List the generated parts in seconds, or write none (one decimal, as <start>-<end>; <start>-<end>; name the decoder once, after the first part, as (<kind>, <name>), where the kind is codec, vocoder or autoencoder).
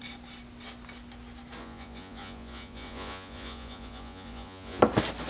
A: 1.6-4.8 (vocoder, Vocos)